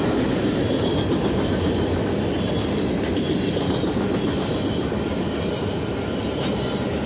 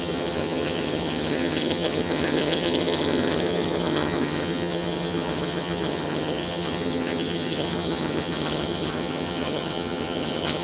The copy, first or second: second